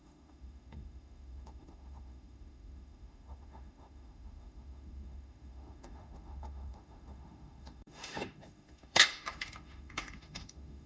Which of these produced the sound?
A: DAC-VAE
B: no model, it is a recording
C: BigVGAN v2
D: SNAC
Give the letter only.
A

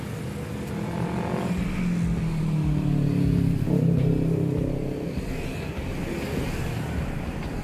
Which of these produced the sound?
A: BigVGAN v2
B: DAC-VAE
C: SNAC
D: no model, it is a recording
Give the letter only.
D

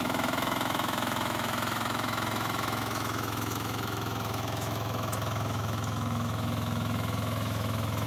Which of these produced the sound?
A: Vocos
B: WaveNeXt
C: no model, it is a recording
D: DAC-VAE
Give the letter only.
D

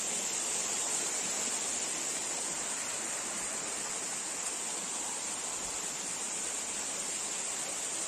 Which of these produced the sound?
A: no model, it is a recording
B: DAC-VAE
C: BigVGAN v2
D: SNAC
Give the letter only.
A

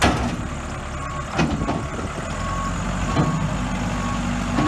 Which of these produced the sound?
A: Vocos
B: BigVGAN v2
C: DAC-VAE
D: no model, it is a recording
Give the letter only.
D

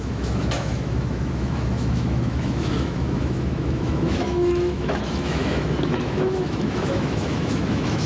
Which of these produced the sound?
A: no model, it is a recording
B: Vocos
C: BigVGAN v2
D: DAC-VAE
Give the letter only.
D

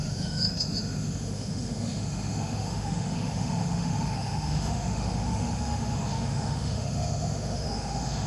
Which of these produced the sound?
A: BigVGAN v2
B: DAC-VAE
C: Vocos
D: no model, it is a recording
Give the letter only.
B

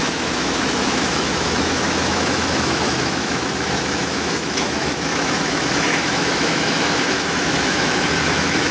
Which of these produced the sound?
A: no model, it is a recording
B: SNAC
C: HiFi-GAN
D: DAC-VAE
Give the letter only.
D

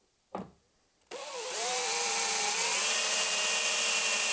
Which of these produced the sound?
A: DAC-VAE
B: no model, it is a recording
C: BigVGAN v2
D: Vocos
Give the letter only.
B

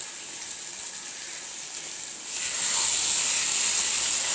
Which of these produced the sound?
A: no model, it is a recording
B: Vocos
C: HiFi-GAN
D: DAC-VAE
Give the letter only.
A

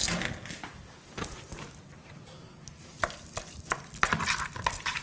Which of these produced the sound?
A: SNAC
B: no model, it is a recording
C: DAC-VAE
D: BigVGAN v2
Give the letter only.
B